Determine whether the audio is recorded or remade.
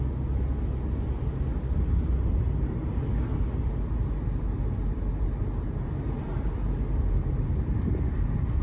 recorded